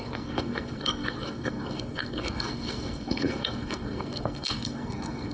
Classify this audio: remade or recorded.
remade